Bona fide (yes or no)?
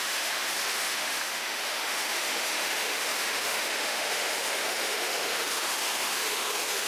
no